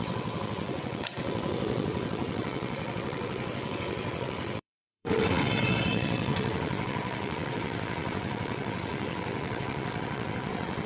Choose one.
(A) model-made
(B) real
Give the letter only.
A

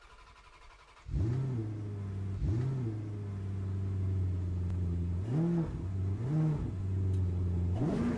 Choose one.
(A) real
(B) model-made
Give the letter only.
A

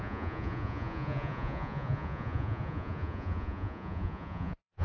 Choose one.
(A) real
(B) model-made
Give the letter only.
B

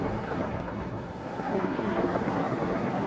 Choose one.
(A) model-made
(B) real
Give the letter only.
A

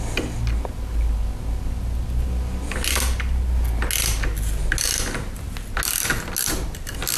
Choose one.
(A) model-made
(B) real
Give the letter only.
B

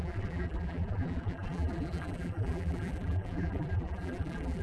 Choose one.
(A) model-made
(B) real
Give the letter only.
A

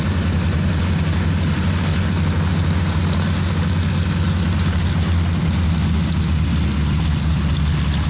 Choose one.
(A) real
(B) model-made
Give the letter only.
A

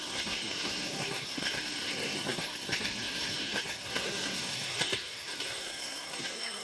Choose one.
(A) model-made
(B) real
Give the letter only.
A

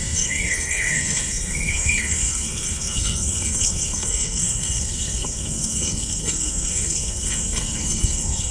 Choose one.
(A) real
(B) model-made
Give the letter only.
B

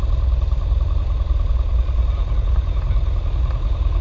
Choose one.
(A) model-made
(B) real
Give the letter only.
B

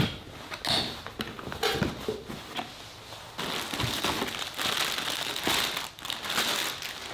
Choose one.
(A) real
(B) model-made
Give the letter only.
A